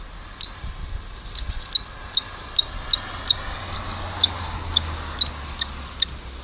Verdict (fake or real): real